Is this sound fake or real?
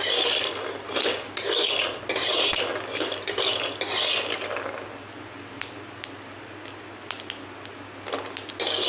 real